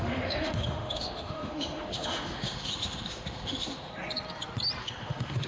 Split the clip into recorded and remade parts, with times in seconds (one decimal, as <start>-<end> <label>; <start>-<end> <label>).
0.0-3.9 remade; 3.9-4.8 recorded; 4.8-5.5 remade